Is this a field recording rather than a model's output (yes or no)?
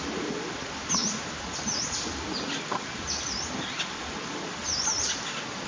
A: yes